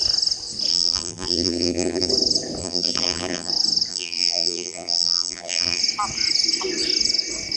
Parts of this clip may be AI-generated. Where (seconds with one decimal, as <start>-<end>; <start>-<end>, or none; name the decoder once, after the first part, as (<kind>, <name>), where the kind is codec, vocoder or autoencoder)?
0.7-2.1 (vocoder, BigVGAN v2); 2.6-3.5; 3.9-5.8